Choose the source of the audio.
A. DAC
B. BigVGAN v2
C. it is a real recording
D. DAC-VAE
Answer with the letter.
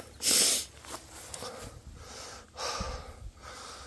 C